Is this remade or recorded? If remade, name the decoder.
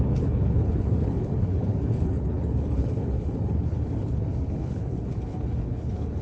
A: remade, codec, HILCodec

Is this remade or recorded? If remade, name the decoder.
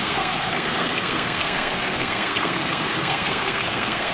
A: remade, codec, SNAC